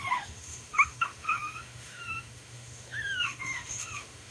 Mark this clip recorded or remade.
remade